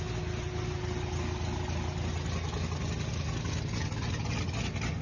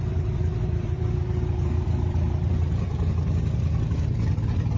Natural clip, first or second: first